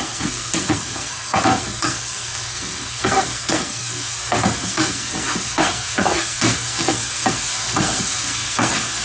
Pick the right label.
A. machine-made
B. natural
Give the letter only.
A